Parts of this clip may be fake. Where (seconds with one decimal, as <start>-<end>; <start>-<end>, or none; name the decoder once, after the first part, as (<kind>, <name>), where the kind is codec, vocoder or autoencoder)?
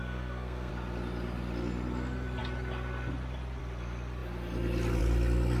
0.0-0.7 (codec, SNAC)